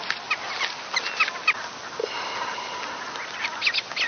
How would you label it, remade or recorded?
recorded